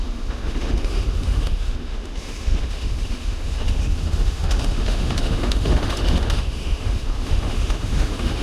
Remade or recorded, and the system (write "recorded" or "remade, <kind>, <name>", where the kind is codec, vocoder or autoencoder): remade, autoencoder, DAC-VAE